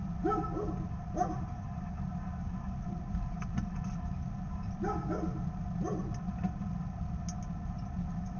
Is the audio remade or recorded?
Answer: recorded